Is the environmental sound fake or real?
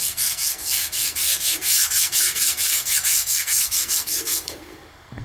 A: fake